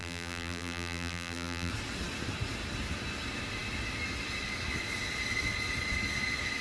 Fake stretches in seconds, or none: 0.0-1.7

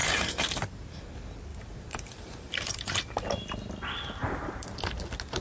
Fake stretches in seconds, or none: 0.0-1.0; 1.5-3.0; 4.2-5.0

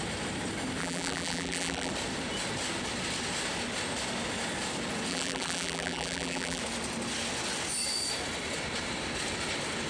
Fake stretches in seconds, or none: 0.8-1.9; 5.1-6.6

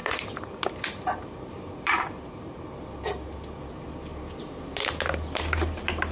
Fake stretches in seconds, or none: 0.0-2.6; 4.1-4.9

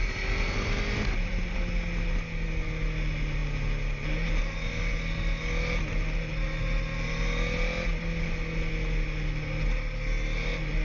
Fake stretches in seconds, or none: none

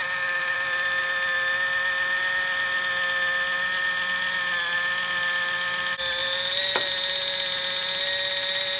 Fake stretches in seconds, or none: 0.0-1.0; 6.2-6.9

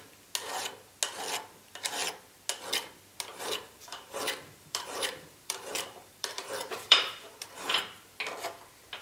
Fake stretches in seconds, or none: 3.3-8.2